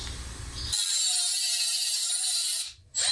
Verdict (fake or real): real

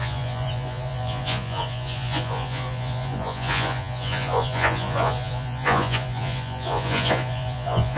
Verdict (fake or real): fake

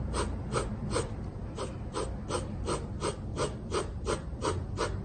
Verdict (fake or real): real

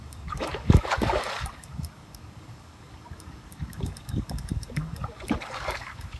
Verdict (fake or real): fake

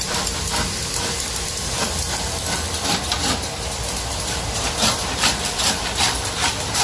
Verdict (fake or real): fake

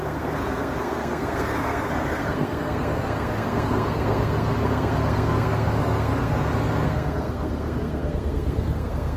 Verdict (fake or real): fake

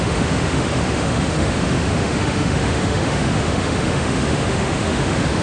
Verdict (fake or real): fake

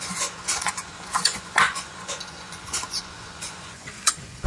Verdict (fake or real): fake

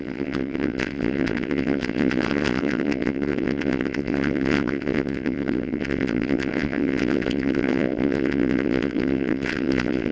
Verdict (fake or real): fake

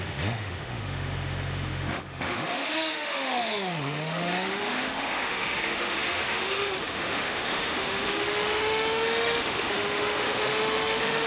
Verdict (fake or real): fake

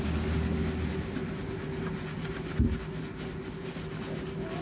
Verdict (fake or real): real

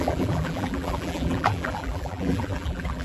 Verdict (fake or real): fake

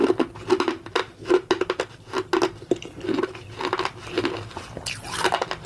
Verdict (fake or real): real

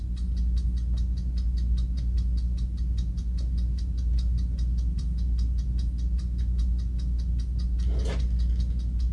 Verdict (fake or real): real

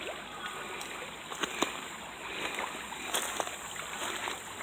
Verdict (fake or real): real